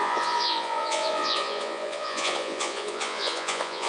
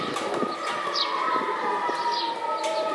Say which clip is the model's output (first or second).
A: first